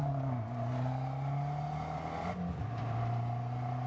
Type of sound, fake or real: real